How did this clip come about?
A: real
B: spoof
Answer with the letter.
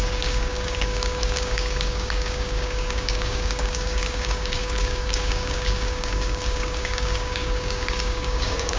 B